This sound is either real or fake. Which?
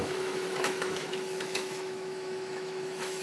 fake